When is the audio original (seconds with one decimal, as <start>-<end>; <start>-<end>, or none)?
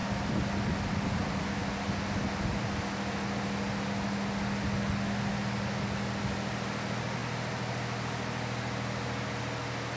0.0-10.0